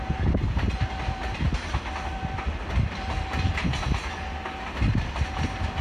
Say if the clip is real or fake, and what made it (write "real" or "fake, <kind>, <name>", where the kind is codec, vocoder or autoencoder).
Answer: real